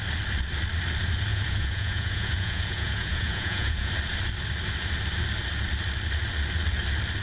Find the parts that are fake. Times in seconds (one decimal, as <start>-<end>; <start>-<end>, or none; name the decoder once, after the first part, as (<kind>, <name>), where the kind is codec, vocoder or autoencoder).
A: 1.3-3.9 (vocoder, Vocos)